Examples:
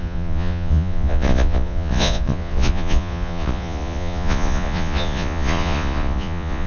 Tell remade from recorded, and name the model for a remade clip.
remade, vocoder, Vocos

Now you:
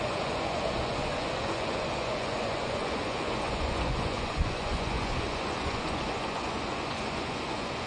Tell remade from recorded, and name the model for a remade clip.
remade, vocoder, Vocos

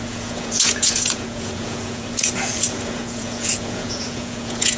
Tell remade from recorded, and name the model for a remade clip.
remade, vocoder, Vocos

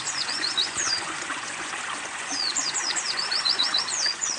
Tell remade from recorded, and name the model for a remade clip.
remade, vocoder, Vocos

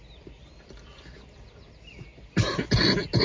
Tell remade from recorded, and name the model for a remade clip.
recorded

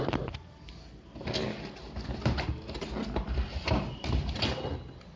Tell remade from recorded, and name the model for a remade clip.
recorded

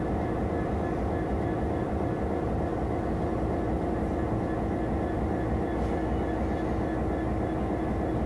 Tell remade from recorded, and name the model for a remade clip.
recorded